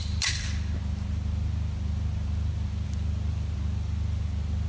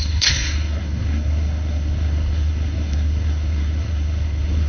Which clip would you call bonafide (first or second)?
first